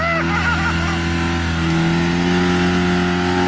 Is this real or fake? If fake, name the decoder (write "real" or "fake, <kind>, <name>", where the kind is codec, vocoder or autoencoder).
real